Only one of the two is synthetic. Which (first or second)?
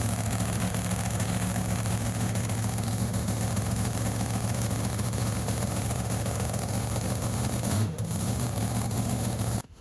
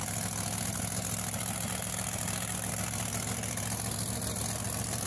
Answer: first